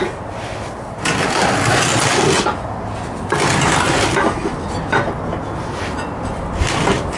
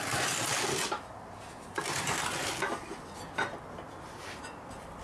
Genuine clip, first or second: first